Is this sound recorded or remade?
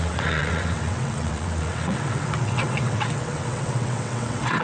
remade